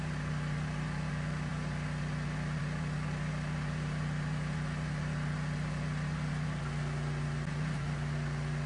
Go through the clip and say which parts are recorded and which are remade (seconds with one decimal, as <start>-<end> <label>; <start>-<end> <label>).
0.0-8.7 recorded